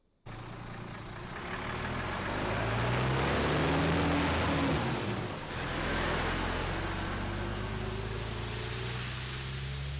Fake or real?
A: real